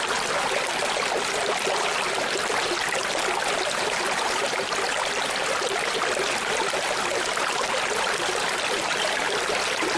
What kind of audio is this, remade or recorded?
recorded